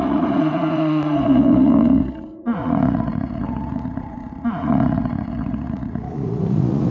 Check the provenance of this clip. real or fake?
fake